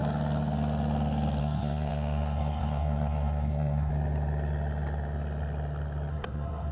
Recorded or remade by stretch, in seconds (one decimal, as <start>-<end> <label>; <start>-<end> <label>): 0.0-1.4 recorded; 1.4-3.9 remade; 3.9-6.1 recorded; 6.1-6.7 remade